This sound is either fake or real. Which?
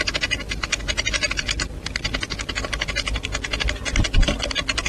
real